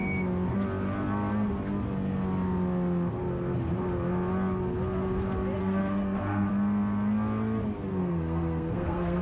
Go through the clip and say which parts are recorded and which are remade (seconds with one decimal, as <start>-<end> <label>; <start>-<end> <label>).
0.0-5.6 recorded; 5.6-6.5 remade; 6.5-7.9 recorded; 7.9-9.2 remade